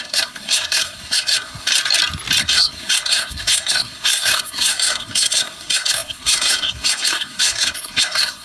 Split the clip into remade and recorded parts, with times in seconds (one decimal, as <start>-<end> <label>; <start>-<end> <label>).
0.0-1.7 remade; 1.7-2.4 recorded; 2.4-8.4 remade